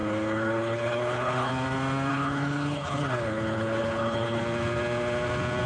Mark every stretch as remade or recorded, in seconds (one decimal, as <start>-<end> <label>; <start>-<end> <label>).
0.0-1.5 remade; 1.5-2.1 recorded; 2.1-4.4 remade; 4.4-5.7 recorded